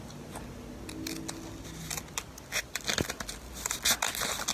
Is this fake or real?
real